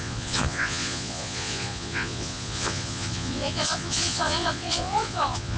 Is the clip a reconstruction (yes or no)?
yes